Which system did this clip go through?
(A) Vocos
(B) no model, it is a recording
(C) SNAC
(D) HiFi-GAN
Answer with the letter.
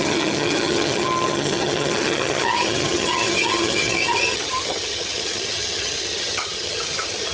D